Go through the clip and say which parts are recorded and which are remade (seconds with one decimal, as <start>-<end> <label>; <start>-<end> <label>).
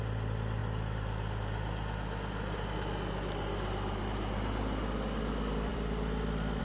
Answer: 0.0-0.6 remade; 0.6-4.0 recorded; 4.0-6.6 remade